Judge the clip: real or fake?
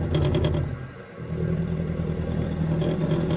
real